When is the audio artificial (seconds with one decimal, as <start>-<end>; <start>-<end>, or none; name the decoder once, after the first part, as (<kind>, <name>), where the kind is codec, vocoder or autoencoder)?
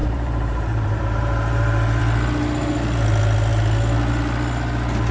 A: 0.0-2.0 (vocoder, BigVGAN v2)